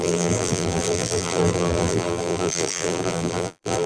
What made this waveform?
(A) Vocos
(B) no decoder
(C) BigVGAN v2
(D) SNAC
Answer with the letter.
C